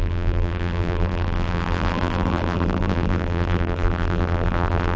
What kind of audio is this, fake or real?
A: fake